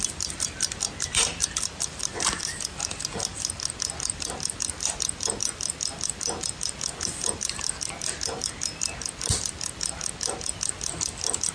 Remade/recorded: remade